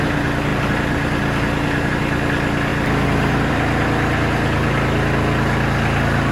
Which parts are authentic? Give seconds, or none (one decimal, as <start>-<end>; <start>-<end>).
0.0-6.3